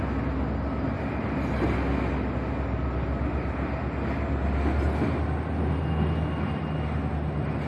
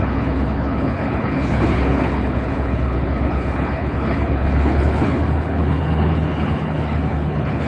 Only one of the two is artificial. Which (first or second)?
second